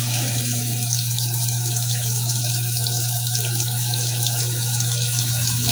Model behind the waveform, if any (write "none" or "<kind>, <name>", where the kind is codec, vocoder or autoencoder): autoencoder, DAC-VAE